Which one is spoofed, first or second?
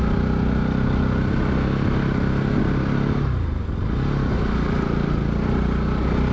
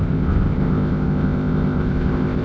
second